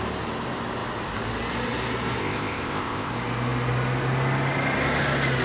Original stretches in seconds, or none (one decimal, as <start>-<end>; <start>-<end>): 0.0-2.2; 3.1-5.4